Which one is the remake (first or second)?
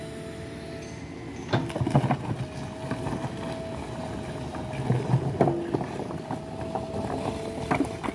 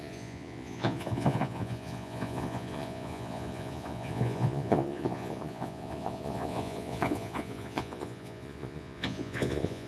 second